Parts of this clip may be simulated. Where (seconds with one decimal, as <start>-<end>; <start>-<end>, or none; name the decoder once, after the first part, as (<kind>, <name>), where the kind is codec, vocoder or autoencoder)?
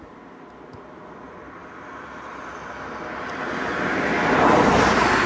none